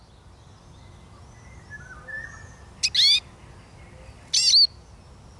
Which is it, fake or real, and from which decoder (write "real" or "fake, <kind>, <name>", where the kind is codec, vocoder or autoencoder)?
real